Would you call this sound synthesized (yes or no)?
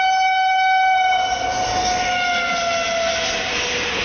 no